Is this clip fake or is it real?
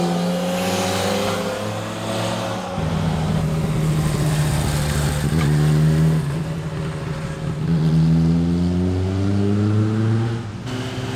real